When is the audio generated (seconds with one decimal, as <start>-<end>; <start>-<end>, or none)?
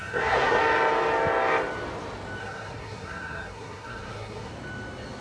0.0-0.6; 2.4-4.5